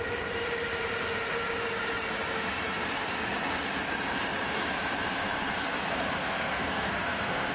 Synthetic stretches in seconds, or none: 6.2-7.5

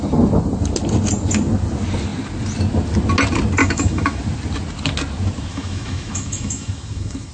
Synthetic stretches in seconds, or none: 3.6-4.2; 5.5-7.3

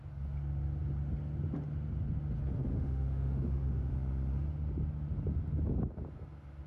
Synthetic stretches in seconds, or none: 2.7-3.9

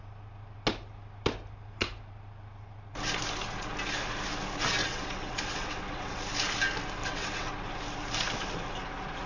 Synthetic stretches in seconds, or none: 4.8-6.2; 7.0-7.5

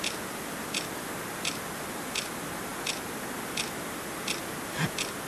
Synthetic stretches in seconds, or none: none

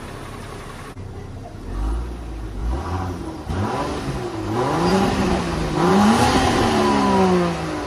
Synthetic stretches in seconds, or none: 2.6-3.7; 4.9-5.4; 5.9-6.8

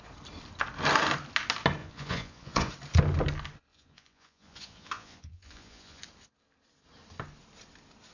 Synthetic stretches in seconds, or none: 1.8-2.7; 3.7-6.0

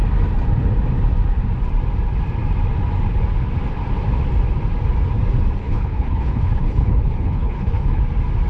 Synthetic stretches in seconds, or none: 5.6-8.0